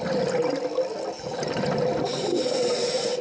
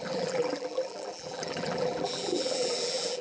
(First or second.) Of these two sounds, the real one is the first